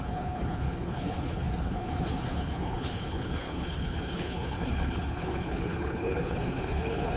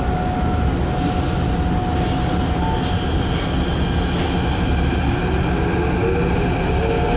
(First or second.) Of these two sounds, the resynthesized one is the first